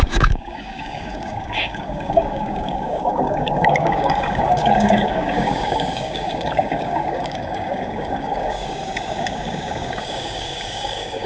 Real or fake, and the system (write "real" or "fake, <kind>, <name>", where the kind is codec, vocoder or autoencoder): fake, codec, DAC